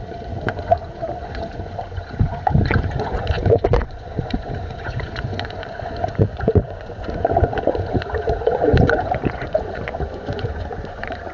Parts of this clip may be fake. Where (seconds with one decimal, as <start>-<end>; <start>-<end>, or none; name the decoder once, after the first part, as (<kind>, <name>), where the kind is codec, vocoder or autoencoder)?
0.0-11.3 (vocoder, Vocos)